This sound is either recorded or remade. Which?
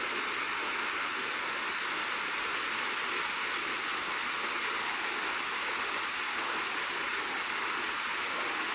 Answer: recorded